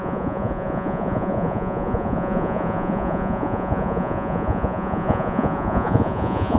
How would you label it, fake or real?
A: fake